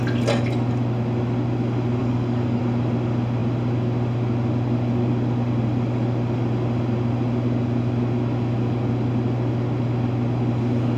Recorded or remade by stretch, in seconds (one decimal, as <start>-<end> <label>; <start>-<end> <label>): 0.0-2.0 recorded; 2.0-2.6 remade; 2.6-11.0 recorded